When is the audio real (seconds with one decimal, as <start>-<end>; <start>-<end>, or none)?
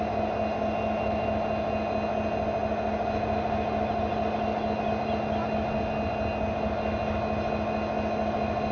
0.0-8.7